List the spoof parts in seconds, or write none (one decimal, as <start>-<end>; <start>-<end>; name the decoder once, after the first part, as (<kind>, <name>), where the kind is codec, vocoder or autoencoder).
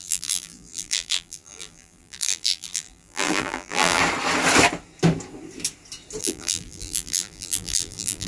0.0-4.0 (vocoder, BigVGAN v2); 6.2-8.3